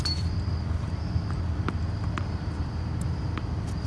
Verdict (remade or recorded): recorded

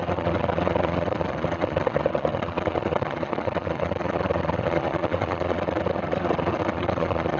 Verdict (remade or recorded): remade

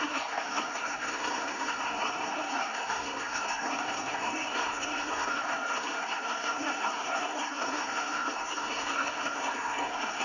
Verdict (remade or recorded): remade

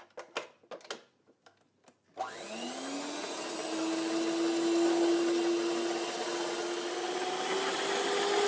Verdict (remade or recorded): recorded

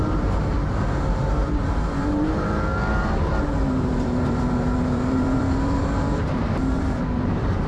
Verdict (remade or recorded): remade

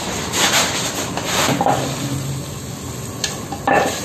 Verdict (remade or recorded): recorded